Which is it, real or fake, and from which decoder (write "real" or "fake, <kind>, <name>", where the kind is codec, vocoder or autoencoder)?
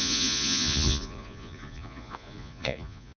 fake, vocoder, Vocos